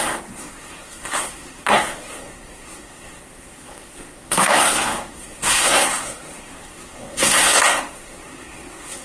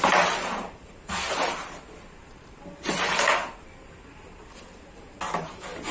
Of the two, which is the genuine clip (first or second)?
second